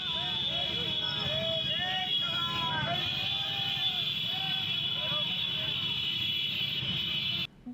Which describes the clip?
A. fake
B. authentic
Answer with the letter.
B